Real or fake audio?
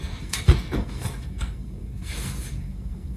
fake